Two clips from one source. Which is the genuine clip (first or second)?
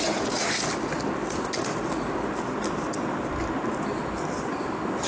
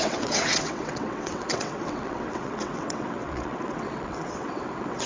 first